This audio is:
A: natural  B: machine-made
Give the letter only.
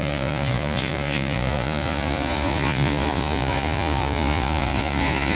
B